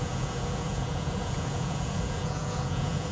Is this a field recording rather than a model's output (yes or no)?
no